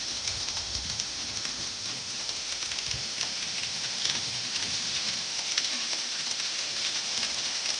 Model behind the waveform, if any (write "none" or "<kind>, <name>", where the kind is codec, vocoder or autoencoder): autoencoder, DAC-VAE